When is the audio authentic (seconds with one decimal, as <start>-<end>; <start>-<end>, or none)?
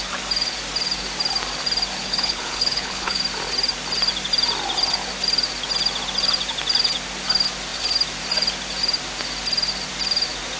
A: 0.0-2.0; 3.2-10.6